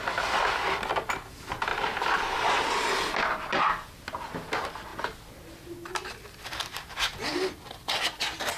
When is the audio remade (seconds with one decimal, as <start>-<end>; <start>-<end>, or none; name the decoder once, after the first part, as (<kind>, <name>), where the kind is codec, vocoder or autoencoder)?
none